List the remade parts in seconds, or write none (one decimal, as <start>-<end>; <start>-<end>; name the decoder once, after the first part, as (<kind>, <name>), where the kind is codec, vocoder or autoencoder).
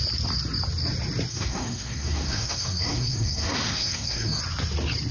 1.3-4.4 (codec, SNAC)